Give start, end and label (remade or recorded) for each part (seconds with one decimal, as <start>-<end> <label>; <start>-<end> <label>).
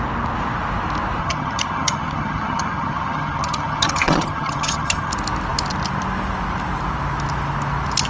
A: 0.0-1.2 recorded; 1.2-5.1 remade; 5.1-8.1 recorded